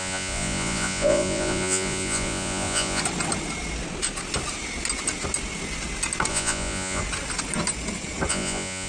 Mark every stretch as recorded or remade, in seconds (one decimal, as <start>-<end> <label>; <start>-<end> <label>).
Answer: 0.0-3.0 remade; 3.0-6.3 recorded; 6.3-7.0 remade; 7.0-8.3 recorded; 8.3-8.9 remade